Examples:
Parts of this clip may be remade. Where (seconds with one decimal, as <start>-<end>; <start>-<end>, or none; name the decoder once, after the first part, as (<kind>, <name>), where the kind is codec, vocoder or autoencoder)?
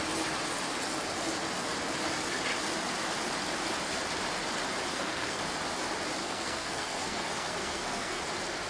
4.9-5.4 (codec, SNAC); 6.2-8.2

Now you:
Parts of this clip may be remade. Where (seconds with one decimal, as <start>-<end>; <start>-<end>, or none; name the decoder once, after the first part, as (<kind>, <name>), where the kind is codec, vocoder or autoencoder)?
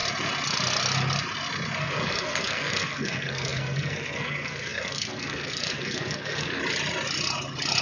1.8-6.6 (codec, SNAC)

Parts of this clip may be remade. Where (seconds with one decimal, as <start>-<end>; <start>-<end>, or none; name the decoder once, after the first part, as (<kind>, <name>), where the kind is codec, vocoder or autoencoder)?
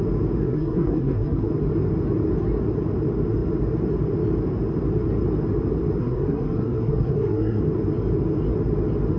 0.4-1.5 (codec, SNAC); 6.0-7.6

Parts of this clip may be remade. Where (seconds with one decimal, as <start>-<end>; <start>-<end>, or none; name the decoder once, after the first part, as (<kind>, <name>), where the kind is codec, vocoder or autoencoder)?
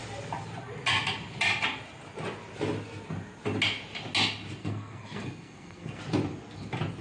4.6-6.0 (codec, SNAC)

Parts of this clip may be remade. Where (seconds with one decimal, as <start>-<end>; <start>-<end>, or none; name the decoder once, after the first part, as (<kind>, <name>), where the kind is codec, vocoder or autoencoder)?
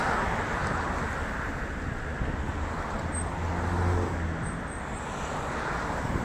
none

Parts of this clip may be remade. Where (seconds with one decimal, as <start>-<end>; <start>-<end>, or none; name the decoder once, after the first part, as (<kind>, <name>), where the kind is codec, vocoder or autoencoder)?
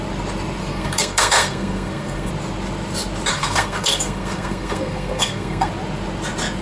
0.6-2.3 (codec, SNAC); 3.3-5.7